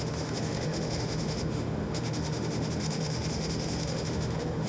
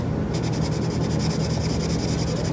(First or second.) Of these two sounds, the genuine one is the second